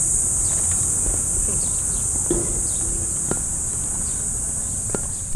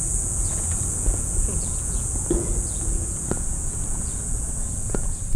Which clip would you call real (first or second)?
first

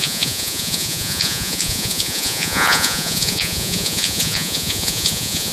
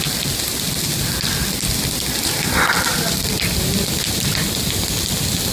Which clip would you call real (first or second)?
second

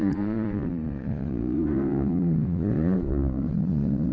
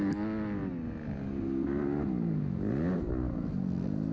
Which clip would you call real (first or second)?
second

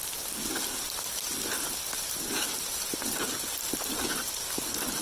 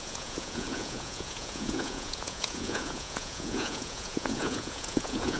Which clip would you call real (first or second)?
first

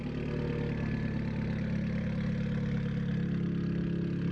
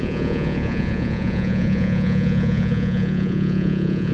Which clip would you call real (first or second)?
first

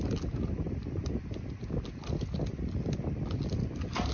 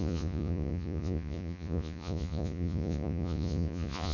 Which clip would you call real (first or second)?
first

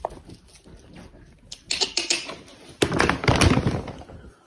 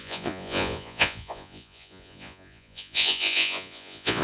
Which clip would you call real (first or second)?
first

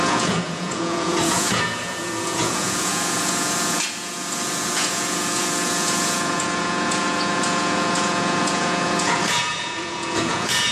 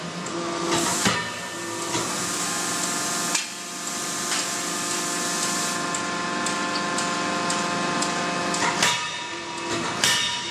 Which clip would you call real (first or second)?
second